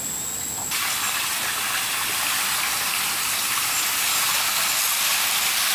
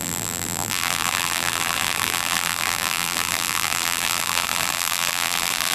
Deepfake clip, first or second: second